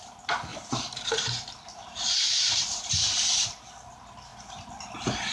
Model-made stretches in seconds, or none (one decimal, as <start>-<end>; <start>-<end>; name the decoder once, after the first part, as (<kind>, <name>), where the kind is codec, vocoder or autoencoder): 0.5-3.7 (vocoder, BigVGAN v2)